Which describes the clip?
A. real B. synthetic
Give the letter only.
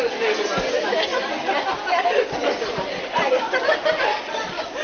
A